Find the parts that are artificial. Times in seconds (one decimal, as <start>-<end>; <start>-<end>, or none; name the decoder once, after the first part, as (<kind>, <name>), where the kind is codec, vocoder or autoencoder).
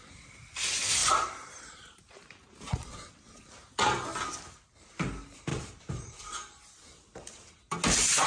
1.0-2.0 (vocoder, BigVGAN v2); 5.5-6.1